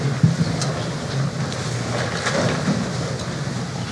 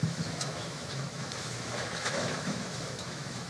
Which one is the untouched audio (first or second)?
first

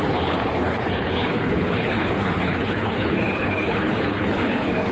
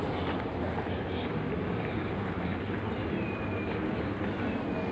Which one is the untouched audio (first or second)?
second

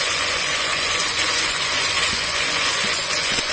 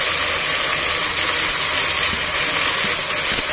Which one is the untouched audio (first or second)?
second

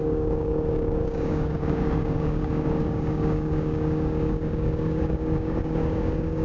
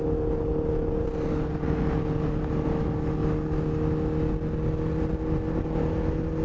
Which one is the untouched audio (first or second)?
second